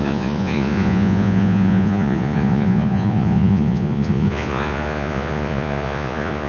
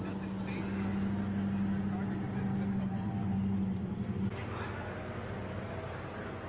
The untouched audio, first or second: second